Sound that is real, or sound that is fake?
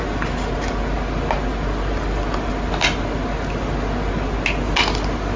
real